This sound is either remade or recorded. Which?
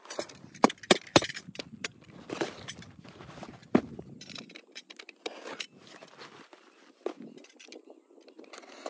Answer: recorded